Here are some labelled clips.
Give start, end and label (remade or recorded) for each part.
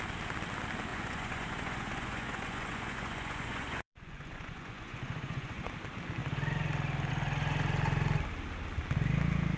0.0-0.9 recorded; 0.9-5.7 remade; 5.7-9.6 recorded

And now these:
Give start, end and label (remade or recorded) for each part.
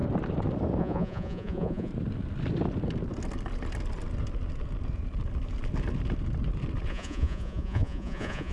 0.0-0.8 recorded; 0.8-1.9 remade; 1.9-6.9 recorded; 6.9-8.5 remade